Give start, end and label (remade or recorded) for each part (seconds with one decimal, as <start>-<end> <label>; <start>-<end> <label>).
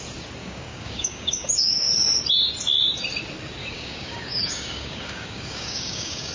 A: 0.0-0.4 recorded; 0.4-1.9 remade; 1.9-3.6 recorded; 3.6-6.3 remade